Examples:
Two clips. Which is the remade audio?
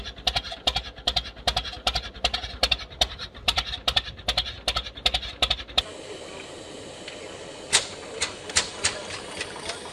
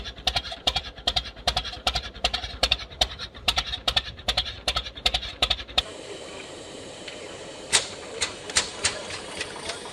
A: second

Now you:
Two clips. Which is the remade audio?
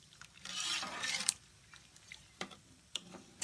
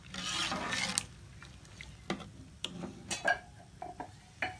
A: first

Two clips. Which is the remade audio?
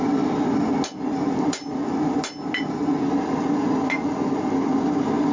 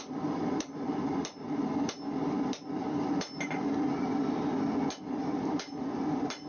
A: second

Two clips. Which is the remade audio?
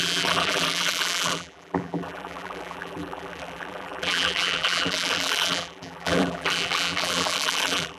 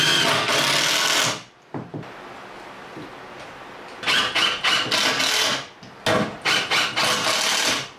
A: first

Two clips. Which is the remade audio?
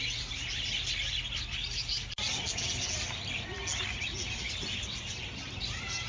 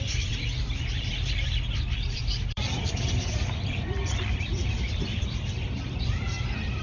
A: second